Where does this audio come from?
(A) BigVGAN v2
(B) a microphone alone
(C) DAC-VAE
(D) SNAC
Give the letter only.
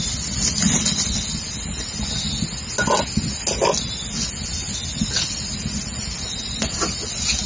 B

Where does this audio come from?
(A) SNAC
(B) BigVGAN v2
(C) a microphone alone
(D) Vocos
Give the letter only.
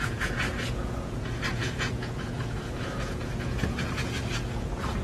D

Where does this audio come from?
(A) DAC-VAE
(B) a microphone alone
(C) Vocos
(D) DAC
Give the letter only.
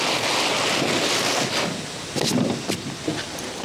B